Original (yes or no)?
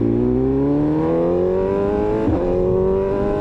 yes